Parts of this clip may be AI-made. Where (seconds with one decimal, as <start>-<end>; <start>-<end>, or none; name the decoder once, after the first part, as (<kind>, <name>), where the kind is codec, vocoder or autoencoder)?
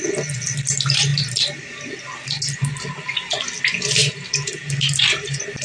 none